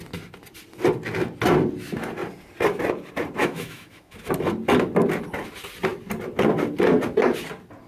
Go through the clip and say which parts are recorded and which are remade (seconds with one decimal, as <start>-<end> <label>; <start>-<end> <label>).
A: 0.0-3.4 recorded; 3.4-4.2 remade; 4.2-7.9 recorded